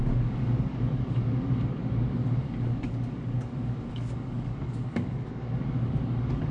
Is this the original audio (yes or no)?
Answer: no